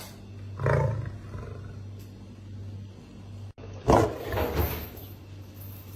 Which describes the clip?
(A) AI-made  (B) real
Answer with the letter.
B